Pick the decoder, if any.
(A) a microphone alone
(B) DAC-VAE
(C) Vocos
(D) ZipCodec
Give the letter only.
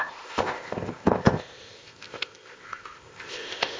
D